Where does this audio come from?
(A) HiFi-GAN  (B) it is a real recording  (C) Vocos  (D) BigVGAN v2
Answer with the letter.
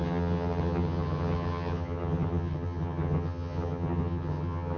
A